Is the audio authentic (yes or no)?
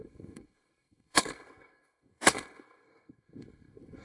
no